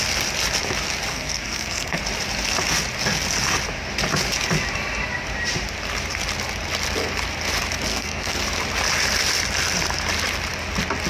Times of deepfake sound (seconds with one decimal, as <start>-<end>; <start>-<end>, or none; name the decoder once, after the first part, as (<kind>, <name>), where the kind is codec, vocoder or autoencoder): 1.1-2.0 (codec, SNAC); 7.9-8.4